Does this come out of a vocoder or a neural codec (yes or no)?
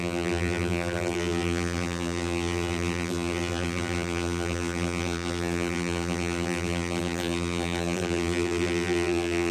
yes